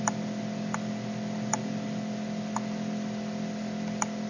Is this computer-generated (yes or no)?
no